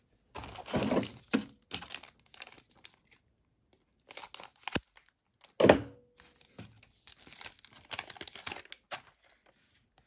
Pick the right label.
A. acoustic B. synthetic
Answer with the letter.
A